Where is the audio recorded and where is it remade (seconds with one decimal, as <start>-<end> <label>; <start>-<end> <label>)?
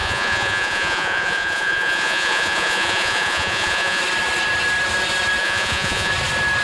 0.0-4.0 remade; 4.0-5.4 recorded; 5.4-6.1 remade; 6.1-6.6 recorded